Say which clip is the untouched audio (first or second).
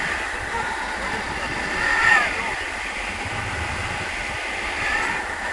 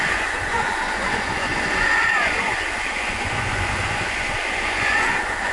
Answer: first